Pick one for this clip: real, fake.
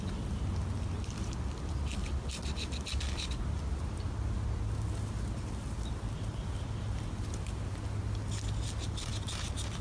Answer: real